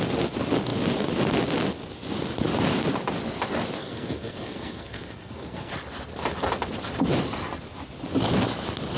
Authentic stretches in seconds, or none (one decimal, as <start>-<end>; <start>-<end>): 0.0-3.8; 5.7-9.0